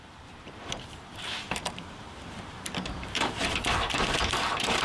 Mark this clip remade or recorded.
remade